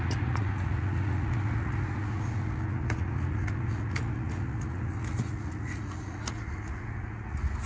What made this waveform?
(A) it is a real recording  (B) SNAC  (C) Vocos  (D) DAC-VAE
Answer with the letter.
C